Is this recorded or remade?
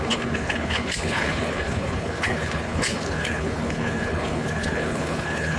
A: remade